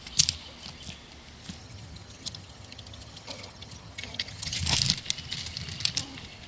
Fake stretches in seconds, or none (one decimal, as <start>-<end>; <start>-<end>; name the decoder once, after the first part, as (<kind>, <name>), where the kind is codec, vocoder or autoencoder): 1.6-4.6 (vocoder, HiFi-GAN)